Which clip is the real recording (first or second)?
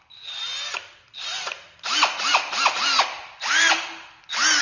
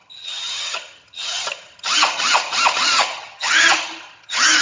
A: first